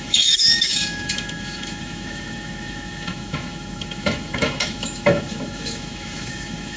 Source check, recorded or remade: remade